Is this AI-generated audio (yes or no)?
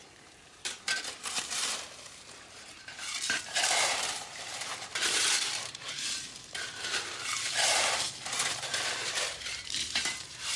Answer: yes